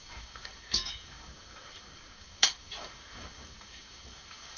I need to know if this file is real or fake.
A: fake